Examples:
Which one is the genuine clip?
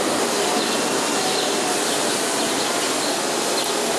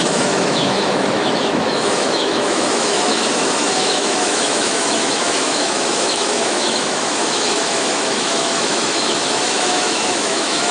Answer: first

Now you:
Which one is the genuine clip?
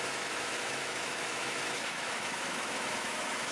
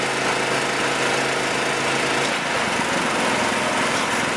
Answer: second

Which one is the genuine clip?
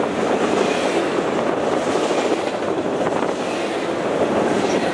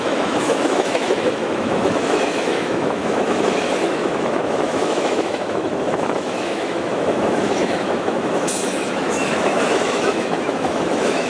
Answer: first